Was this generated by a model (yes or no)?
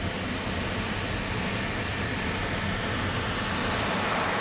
no